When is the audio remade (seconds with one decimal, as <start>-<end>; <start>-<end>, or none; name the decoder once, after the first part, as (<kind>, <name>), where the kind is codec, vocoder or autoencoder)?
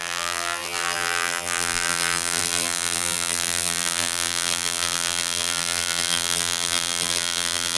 0.0-7.8 (vocoder, BigVGAN v2)